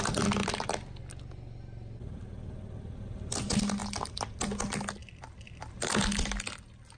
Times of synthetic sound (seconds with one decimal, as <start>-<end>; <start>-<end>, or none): 0.4-1.0; 3.8-4.3; 5.0-5.8